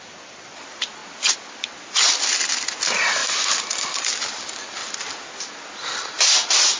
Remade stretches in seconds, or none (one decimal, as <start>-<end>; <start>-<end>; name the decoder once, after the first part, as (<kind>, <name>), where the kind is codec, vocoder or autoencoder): none